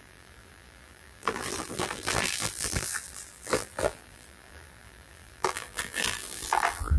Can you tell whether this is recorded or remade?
remade